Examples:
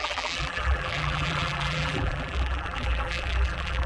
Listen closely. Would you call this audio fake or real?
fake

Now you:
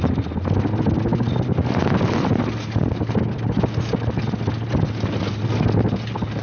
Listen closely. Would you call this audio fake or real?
real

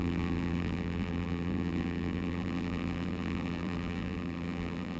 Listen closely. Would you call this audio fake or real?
fake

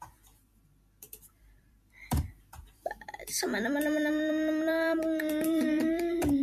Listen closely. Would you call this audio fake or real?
fake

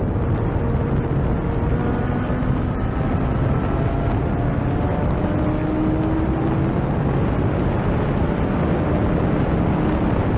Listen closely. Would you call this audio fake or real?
real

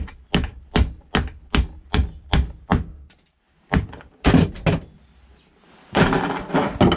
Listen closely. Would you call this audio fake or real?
real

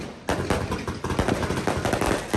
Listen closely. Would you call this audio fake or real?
real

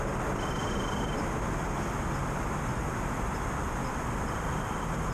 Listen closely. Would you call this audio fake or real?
real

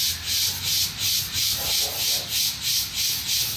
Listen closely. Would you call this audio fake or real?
real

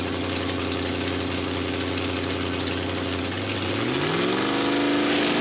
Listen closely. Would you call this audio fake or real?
real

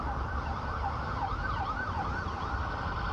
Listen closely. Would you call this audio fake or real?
fake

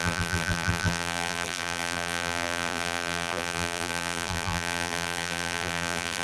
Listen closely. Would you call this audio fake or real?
fake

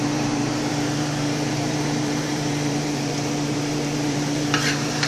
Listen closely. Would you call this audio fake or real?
fake